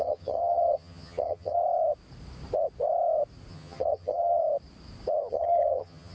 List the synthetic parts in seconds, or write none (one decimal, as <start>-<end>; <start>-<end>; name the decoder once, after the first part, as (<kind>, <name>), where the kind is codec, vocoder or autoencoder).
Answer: 0.0-1.6 (vocoder, HiFi-GAN); 3.5-4.4; 5.3-6.1